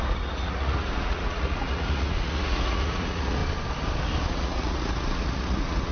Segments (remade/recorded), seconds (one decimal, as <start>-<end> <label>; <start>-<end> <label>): 0.0-3.4 remade; 3.4-4.2 recorded; 4.2-5.9 remade

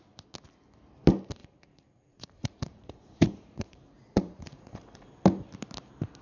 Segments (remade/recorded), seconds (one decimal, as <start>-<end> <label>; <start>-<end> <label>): 0.0-1.4 recorded; 1.4-5.1 remade; 5.1-6.2 recorded

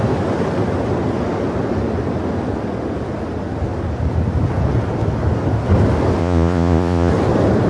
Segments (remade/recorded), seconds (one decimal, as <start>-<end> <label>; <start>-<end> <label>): 0.0-6.2 recorded; 6.2-7.1 remade; 7.1-7.7 recorded